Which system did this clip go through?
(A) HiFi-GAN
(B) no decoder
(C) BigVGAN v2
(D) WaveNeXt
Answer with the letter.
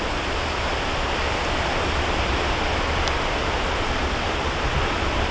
B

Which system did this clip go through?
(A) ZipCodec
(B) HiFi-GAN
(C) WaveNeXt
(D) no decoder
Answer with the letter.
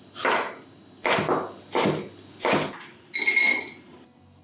D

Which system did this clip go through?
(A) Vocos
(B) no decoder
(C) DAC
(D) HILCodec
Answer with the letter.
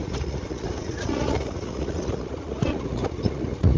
A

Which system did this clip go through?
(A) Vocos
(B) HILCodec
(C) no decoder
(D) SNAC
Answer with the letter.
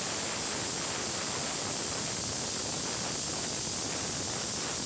C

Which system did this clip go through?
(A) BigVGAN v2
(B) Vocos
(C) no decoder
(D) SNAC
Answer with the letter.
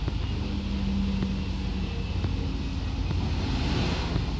C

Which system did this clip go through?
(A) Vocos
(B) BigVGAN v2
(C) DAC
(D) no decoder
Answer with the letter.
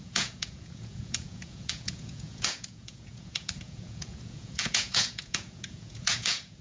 A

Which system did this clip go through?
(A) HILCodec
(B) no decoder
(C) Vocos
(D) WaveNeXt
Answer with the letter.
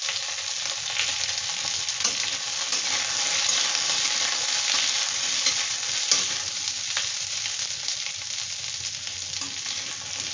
B